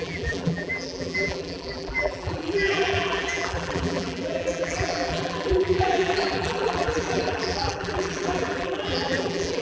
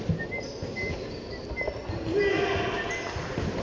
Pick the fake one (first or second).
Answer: first